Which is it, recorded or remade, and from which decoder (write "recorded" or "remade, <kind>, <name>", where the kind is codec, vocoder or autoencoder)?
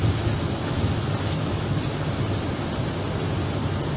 recorded